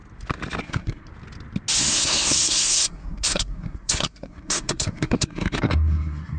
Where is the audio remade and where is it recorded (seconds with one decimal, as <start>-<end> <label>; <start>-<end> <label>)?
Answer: 0.0-0.6 recorded; 0.6-1.1 remade; 1.1-1.8 recorded; 1.8-6.4 remade